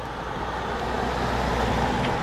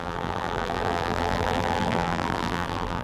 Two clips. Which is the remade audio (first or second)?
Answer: second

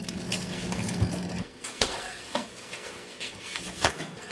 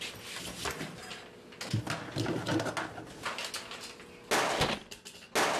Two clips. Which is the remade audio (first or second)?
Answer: first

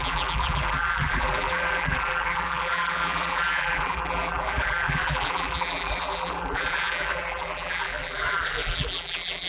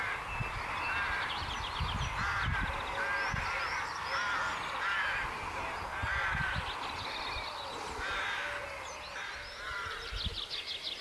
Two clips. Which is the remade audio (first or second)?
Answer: first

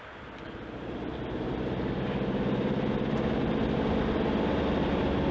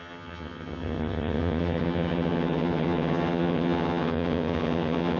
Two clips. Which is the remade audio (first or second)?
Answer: second